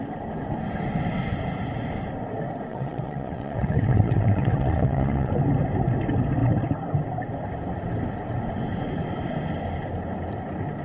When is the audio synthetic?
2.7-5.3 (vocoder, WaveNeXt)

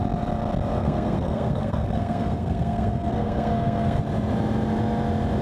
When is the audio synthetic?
0.8-4.0 (codec, SNAC)

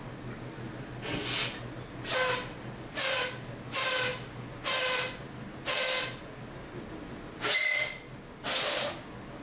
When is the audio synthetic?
none

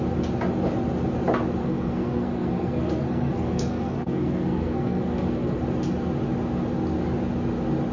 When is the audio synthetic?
1.6-5.6 (codec, SNAC)

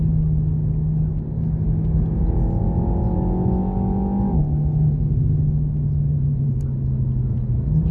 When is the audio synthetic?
6.1-6.6 (vocoder, Vocos)

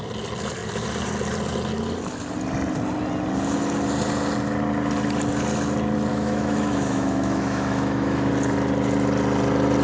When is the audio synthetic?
6.1-8.3 (autoencoder, DAC-VAE)

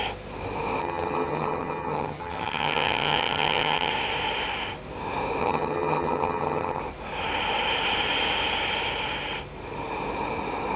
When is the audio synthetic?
0.8-3.9 (vocoder, HiFi-GAN); 5.4-6.8

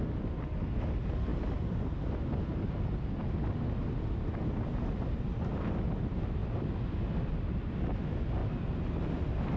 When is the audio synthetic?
none